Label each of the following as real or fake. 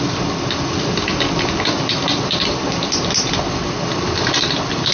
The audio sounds real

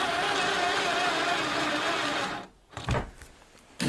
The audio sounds real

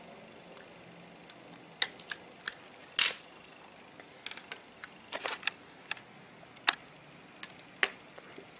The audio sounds real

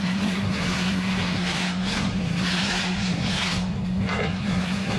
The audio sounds fake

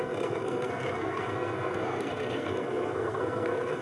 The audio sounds fake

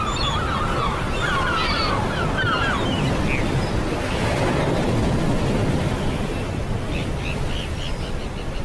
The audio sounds real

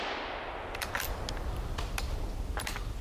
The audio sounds real